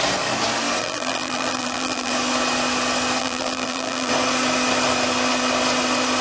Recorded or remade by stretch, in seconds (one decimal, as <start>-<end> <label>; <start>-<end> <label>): 0.0-0.8 recorded; 0.8-2.1 remade; 2.1-3.2 recorded; 3.2-4.1 remade; 4.1-6.2 recorded